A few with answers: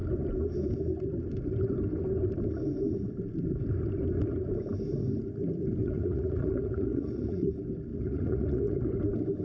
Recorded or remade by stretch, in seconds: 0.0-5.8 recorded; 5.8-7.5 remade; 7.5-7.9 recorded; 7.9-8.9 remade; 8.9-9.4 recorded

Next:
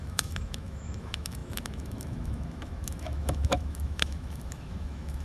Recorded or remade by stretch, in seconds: 0.0-5.2 remade

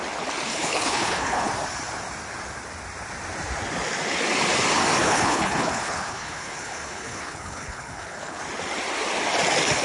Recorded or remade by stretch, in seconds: 0.0-0.5 recorded; 0.5-1.5 remade; 1.5-5.0 recorded; 5.0-8.4 remade; 8.4-9.8 recorded

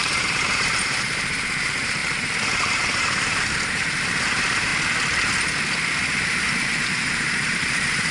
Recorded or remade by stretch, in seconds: 0.0-4.7 remade; 4.7-6.3 recorded; 6.3-8.1 remade